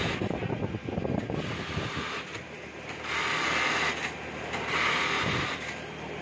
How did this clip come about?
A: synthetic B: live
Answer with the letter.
B